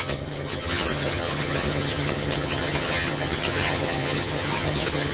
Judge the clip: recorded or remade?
remade